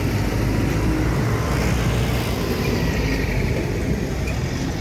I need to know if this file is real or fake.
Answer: real